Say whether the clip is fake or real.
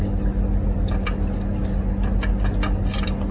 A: real